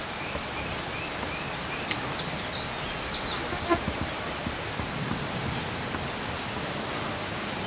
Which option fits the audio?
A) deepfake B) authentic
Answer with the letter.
B